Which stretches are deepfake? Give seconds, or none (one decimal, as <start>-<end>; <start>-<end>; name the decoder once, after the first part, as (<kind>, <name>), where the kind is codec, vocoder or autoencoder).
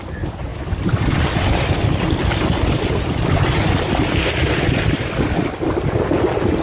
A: none